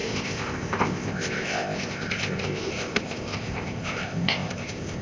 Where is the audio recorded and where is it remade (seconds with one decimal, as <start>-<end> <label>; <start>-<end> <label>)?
0.0-5.0 remade